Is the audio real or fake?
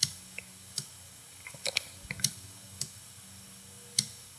fake